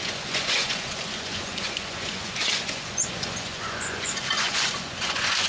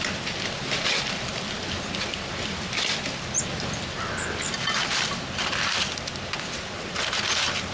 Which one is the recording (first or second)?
second